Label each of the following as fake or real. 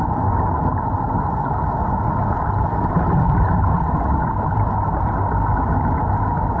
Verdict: real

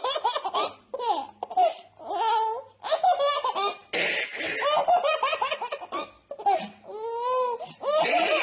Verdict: real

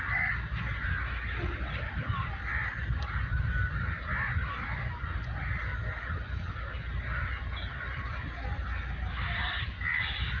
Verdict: real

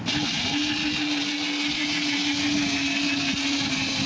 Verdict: real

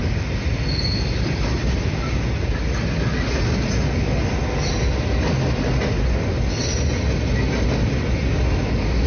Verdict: real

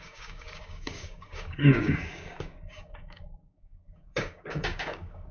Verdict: fake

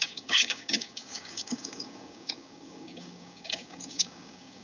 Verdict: fake